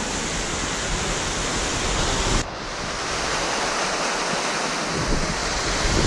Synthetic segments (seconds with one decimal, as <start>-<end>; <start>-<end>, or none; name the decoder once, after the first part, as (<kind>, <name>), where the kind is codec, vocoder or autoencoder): none